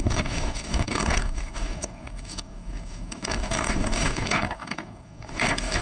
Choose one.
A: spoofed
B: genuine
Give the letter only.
A